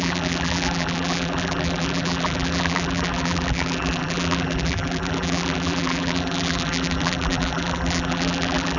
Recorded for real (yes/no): no